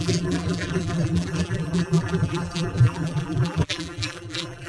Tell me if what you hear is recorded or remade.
remade